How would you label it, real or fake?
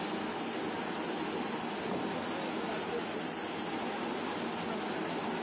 real